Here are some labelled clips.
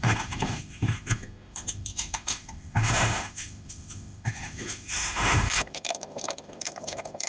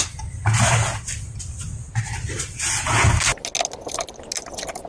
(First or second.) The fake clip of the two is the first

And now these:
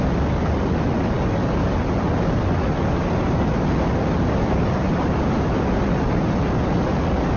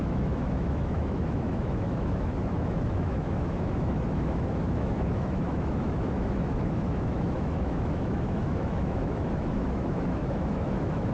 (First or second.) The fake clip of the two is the second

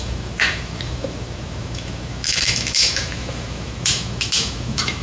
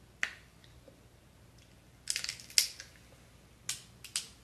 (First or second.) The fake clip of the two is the first